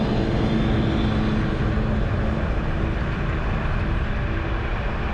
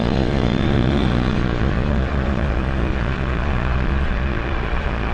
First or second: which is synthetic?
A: second